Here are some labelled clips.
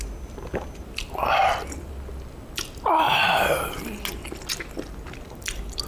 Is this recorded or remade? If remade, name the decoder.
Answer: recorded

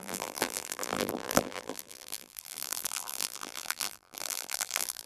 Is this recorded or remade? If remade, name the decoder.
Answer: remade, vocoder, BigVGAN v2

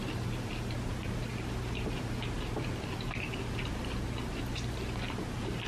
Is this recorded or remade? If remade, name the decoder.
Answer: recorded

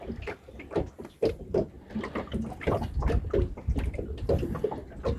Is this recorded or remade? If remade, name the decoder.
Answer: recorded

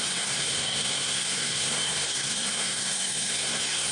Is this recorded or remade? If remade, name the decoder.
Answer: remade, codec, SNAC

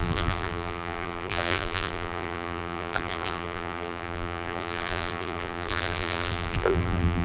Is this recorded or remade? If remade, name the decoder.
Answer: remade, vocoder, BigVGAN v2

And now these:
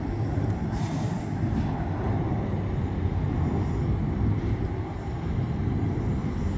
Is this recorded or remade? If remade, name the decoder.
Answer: recorded